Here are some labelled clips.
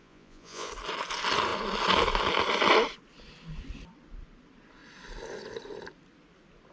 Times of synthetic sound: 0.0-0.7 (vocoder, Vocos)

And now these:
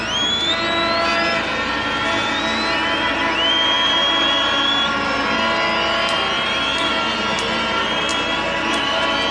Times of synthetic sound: none

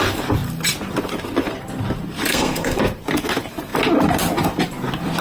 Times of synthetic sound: 2.3-2.8 (codec, SNAC)

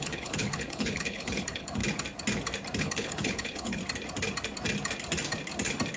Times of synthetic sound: 0.0-1.8 (codec, HILCodec); 2.8-3.8

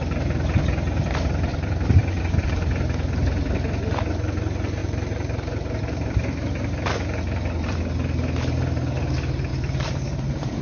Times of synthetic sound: 1.5-2.2 (vocoder, BigVGAN v2); 4.8-7.8; 9.5-10.6